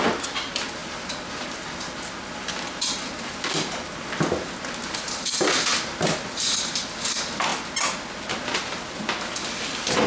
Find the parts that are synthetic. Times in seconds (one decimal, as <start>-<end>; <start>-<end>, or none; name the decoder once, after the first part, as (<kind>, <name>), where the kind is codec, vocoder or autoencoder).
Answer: none